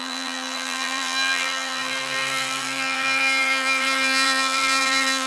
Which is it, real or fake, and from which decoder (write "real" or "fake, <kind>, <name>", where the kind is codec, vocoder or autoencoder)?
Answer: fake, vocoder, BigVGAN v2